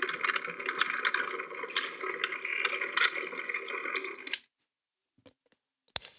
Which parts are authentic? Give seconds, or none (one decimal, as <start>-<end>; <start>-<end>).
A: 0.0-6.2